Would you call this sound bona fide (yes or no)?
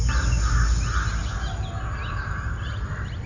yes